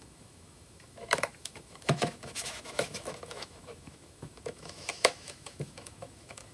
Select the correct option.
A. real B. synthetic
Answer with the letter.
B